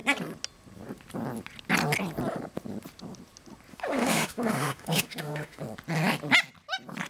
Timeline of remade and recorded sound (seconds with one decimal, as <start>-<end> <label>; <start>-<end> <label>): 0.0-3.7 recorded; 3.7-5.6 remade; 5.6-7.1 recorded